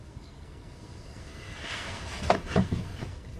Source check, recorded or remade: remade